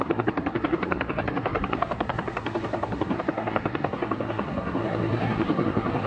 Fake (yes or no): yes